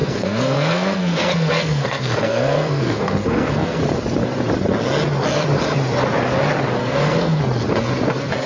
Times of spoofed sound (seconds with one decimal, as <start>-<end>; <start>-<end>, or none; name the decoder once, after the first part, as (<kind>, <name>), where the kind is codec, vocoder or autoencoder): 0.0-3.8 (codec, SNAC); 6.8-7.4